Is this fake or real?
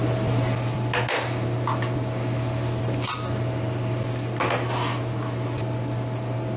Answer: real